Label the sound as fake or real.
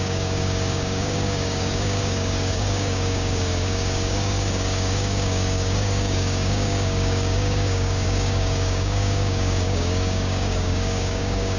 fake